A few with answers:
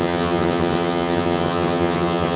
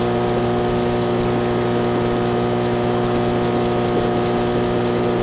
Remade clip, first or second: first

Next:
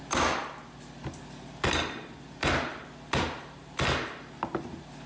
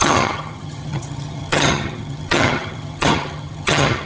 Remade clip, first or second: second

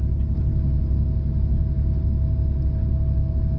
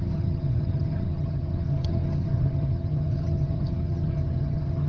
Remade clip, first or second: second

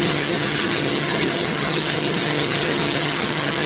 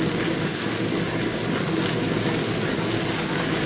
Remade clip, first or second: first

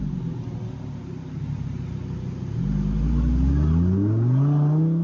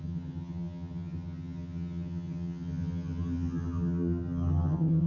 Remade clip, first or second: second